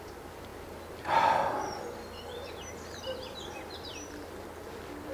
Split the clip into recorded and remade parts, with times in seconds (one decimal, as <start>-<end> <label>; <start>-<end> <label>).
0.0-5.1 recorded